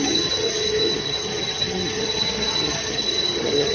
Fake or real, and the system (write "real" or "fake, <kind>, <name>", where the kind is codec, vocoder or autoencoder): fake, vocoder, HiFi-GAN